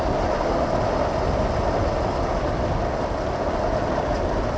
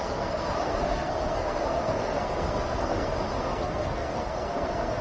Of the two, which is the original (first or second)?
first